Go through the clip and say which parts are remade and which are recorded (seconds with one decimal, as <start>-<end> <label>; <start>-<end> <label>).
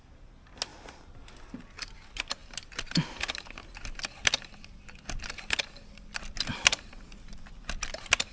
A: 0.0-8.3 recorded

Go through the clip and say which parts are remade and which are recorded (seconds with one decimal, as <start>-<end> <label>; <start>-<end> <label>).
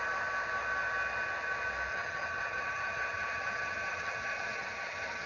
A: 0.0-1.9 recorded; 1.9-5.3 remade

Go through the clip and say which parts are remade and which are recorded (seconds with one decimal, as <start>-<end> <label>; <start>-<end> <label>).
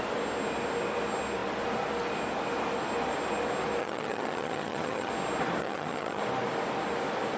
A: 0.0-3.8 recorded; 3.8-5.1 remade; 5.1-5.6 recorded; 5.6-6.2 remade; 6.2-7.4 recorded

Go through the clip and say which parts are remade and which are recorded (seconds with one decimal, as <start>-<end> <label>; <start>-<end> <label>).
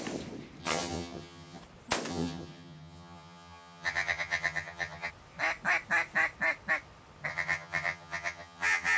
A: 0.0-0.6 recorded; 0.6-1.6 remade; 1.6-2.1 recorded; 2.1-5.1 remade; 5.1-7.3 recorded; 7.3-9.0 remade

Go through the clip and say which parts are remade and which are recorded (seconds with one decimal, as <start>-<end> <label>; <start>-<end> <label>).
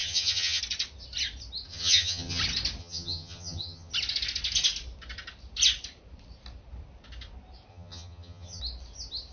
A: 0.0-0.6 remade; 0.6-1.7 recorded; 1.7-2.4 remade; 2.4-2.8 recorded; 2.8-3.9 remade; 3.9-7.7 recorded; 7.7-8.6 remade; 8.6-9.3 recorded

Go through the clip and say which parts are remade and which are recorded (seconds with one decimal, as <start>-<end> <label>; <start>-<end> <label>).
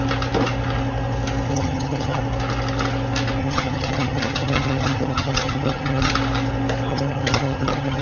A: 0.0-1.5 recorded; 1.5-2.2 remade; 2.2-3.4 recorded; 3.4-6.1 remade; 6.1-6.9 recorded; 6.9-8.0 remade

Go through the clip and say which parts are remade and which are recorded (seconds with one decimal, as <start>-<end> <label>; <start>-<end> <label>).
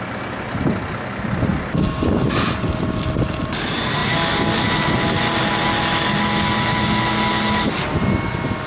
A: 0.0-8.7 recorded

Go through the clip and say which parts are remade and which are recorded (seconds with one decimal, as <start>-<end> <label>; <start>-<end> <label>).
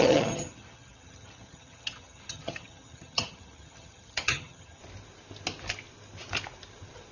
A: 0.0-4.8 remade; 4.8-7.1 recorded